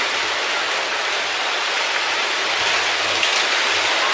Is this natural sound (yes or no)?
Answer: yes